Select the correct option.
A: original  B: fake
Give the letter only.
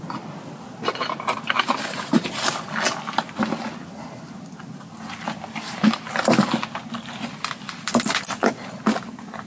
A